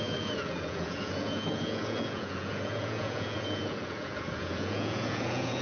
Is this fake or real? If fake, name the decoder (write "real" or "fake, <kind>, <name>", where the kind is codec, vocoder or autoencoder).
fake, vocoder, Vocos